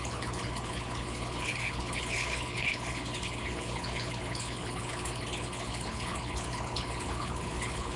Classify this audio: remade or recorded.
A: remade